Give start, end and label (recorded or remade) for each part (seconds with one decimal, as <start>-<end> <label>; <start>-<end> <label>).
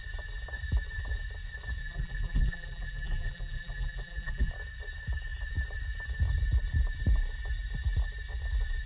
0.0-1.8 recorded; 1.8-4.5 remade; 4.5-8.9 recorded